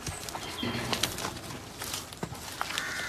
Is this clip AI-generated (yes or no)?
no